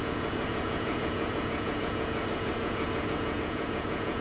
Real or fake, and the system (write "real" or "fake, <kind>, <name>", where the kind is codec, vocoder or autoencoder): fake, vocoder, Vocos